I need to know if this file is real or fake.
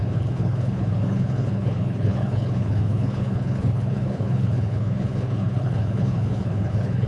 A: fake